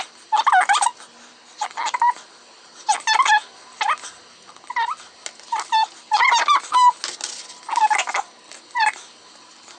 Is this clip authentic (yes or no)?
yes